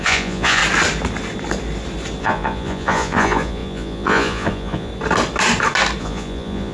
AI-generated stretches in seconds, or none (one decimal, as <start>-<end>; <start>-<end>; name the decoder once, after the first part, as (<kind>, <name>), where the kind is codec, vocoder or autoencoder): 0.0-0.6 (vocoder, Vocos); 2.2-4.9; 6.0-6.7